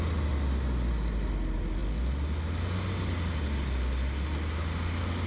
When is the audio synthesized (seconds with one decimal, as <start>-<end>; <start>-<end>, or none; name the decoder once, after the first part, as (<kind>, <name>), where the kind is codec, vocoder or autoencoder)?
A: none